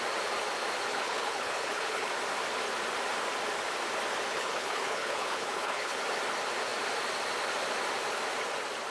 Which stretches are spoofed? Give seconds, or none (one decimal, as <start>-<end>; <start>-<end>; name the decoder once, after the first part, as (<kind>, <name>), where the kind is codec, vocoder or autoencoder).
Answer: 0.9-2.1 (codec, HILCodec); 4.3-6.0